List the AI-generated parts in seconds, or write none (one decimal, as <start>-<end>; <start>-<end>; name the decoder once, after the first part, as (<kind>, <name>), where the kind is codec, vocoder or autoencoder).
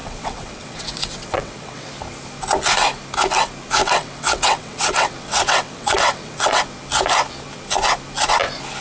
0.0-1.9 (vocoder, WaveNeXt); 3.8-6.6